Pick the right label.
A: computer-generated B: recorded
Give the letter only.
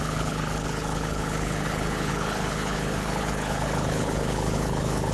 A